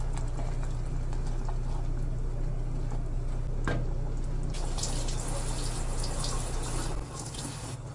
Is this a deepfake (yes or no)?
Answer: no